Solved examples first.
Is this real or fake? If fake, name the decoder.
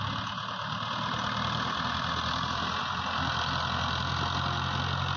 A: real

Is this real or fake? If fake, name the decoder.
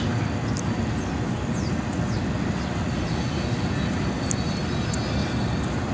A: real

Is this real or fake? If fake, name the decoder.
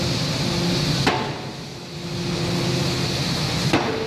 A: real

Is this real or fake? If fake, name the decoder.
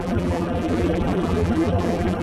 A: fake, vocoder, BigVGAN v2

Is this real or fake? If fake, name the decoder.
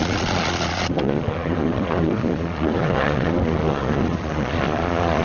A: fake, vocoder, Vocos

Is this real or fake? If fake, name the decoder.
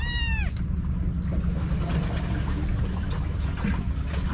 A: real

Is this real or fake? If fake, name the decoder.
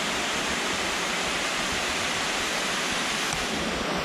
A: fake, vocoder, BigVGAN v2